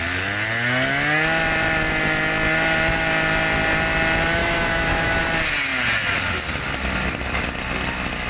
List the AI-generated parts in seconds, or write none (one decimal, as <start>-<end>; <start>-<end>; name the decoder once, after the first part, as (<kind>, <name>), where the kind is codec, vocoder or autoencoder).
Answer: 4.4-5.2 (autoencoder, DAC-VAE)